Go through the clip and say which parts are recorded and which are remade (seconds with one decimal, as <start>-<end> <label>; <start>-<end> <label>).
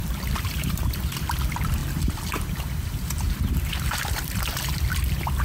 0.0-0.9 remade; 0.9-1.8 recorded; 1.8-5.0 remade; 5.0-5.4 recorded